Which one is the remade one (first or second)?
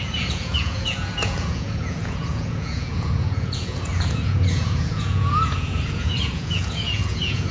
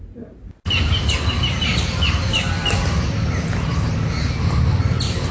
first